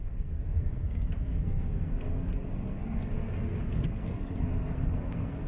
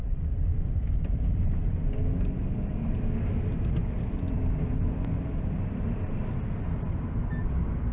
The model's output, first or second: first